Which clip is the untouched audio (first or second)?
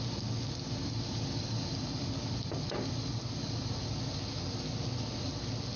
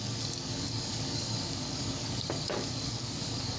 first